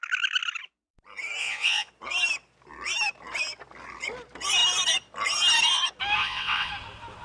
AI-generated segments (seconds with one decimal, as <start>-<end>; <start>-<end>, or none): 1.4-1.9; 6.2-6.7